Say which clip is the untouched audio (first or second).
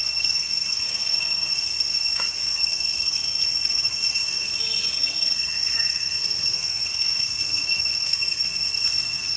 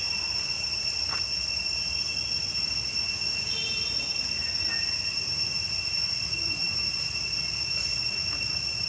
second